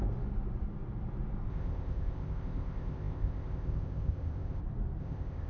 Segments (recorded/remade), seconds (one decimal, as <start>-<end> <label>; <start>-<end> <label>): 0.0-1.5 recorded; 1.5-4.6 remade; 4.6-5.0 recorded; 5.0-5.5 remade